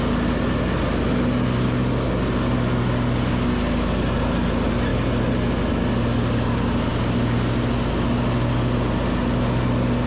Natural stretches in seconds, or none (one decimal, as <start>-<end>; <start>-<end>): 0.0-10.1